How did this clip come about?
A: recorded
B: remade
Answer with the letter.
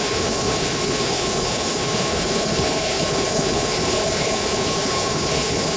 B